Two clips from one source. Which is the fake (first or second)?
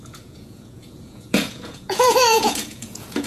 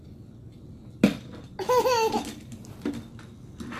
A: first